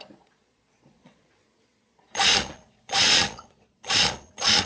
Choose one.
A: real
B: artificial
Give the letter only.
B